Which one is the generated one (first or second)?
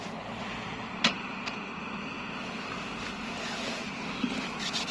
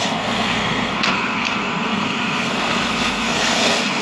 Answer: second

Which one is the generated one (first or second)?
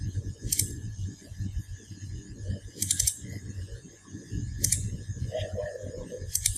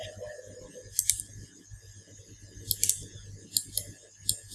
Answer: first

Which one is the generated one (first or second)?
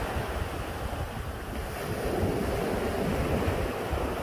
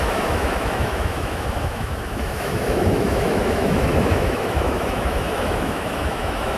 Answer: second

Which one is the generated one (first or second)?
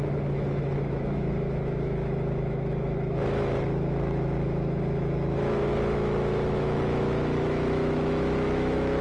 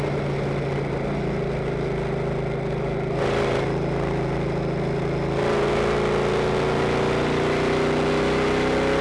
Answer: first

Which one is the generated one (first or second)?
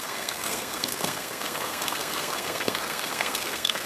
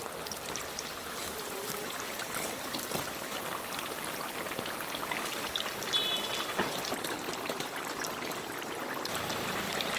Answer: first